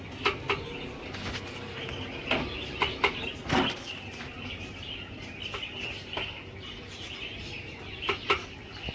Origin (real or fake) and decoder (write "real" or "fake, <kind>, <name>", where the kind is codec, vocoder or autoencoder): real